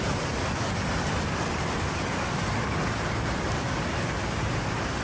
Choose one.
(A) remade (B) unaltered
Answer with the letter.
A